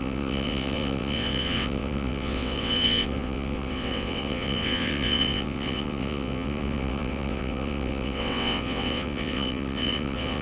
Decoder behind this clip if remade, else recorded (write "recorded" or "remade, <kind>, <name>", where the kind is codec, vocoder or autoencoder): remade, vocoder, WaveNeXt